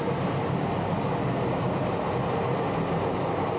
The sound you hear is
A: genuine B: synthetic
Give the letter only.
A